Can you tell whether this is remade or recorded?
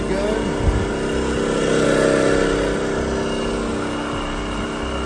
recorded